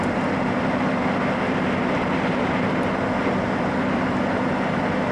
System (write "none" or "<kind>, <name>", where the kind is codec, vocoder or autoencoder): none